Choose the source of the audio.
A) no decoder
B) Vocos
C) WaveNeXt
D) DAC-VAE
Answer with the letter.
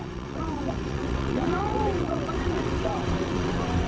C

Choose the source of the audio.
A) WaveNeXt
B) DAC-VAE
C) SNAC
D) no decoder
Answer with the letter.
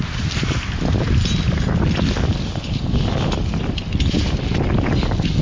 D